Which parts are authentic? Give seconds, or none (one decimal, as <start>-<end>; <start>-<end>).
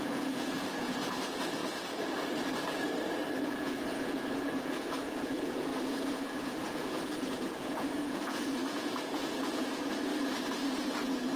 1.6-3.5; 10.1-10.9